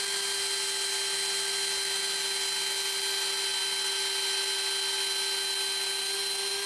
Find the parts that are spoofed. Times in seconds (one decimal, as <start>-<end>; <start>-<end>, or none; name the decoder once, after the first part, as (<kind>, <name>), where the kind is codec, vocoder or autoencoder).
none